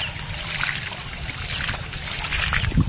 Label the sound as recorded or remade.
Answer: recorded